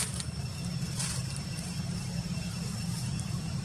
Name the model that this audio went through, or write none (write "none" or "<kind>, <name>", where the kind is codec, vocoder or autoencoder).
vocoder, BigVGAN v2